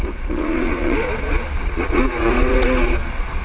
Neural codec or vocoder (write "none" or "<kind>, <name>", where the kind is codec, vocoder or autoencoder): vocoder, Vocos